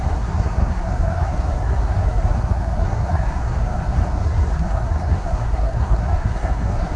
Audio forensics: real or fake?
fake